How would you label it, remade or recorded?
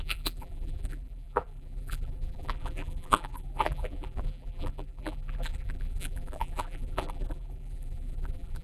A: remade